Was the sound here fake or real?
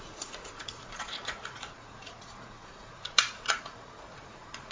fake